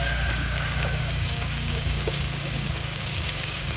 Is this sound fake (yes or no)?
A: yes